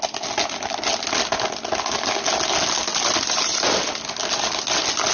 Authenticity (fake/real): real